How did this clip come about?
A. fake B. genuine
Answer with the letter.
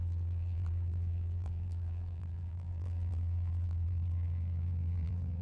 A